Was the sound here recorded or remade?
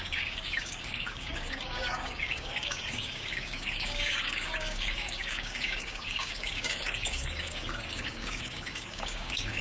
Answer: remade